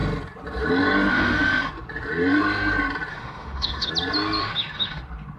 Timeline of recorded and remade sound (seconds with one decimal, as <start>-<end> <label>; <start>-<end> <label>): 0.0-1.1 recorded; 1.1-1.7 remade; 1.7-3.1 recorded; 3.1-3.9 remade; 3.9-4.4 recorded; 4.4-5.0 remade; 5.0-5.4 recorded